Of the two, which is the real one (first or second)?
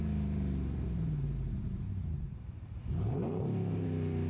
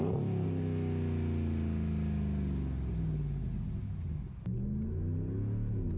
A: second